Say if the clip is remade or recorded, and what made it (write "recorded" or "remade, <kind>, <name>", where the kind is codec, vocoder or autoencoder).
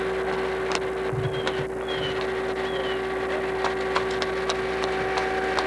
recorded